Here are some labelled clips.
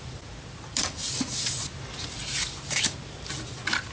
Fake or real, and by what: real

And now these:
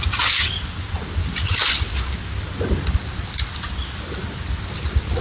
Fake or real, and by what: real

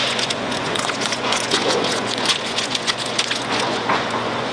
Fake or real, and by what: fake, vocoder, Vocos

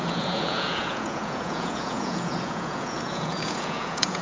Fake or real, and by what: fake, vocoder, Vocos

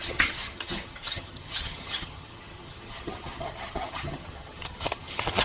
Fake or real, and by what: fake, vocoder, HiFi-GAN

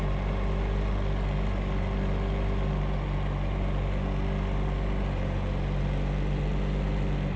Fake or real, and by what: real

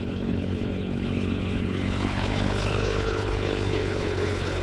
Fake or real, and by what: fake, codec, HILCodec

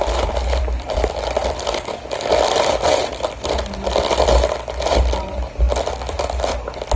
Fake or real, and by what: real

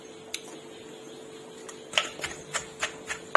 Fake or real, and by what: real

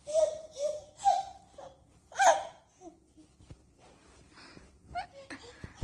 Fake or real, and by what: real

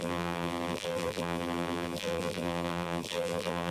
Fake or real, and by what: fake, vocoder, BigVGAN v2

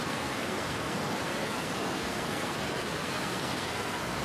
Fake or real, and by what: fake, codec, SNAC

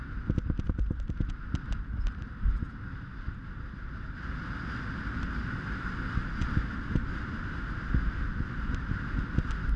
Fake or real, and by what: real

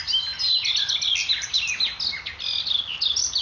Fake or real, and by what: real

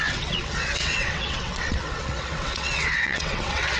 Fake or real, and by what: fake, vocoder, WaveNeXt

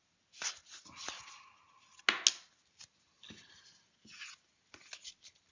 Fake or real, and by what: real